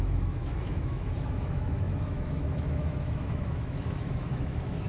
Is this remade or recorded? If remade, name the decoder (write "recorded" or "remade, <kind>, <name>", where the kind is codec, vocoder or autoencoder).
remade, autoencoder, DAC-VAE